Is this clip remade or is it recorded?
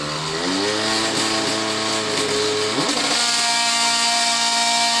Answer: recorded